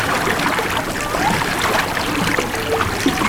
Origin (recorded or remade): recorded